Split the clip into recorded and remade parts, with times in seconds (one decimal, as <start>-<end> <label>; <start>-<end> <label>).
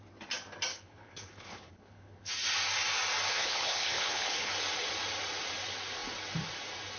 0.0-0.7 recorded; 0.7-2.3 remade; 2.3-3.3 recorded; 3.3-4.5 remade; 4.5-7.0 recorded